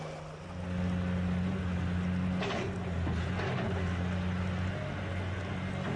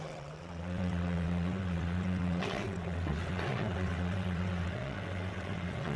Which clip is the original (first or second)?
first